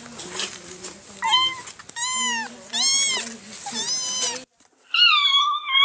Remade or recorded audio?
recorded